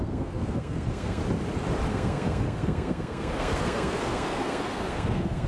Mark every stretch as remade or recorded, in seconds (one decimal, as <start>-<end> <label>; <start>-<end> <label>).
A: 0.0-1.2 remade; 1.2-1.9 recorded; 1.9-5.5 remade

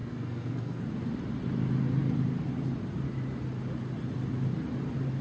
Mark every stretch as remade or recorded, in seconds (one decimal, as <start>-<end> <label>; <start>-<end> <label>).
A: 0.0-0.8 remade; 0.8-5.2 recorded

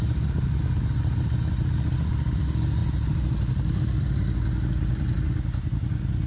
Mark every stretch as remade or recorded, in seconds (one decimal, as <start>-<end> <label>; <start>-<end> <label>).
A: 0.0-6.3 recorded

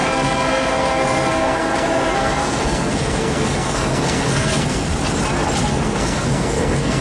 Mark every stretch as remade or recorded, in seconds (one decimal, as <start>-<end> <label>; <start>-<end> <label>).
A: 0.0-4.9 remade; 4.9-5.6 recorded; 5.6-7.0 remade